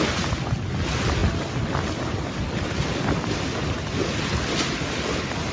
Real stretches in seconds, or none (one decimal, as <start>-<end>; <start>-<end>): 0.0-5.5